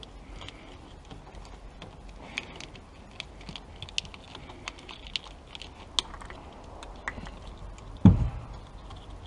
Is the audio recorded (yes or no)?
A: yes